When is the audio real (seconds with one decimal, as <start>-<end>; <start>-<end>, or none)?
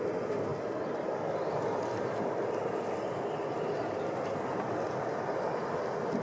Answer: 0.0-6.2